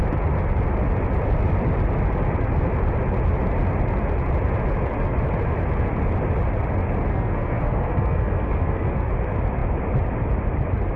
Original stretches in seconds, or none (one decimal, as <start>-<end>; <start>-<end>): 0.0-7.1; 8.9-11.0